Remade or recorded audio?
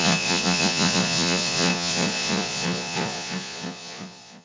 remade